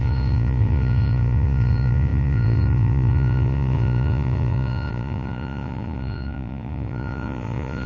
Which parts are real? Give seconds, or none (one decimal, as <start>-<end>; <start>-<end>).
none

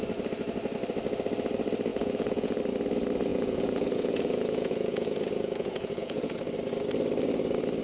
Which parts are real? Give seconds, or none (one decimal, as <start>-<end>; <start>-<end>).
0.0-1.9; 2.6-3.3; 6.4-7.8